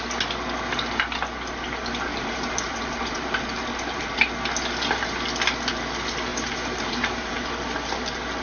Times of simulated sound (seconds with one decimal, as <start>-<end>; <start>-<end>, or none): 2.1-4.0; 6.3-7.4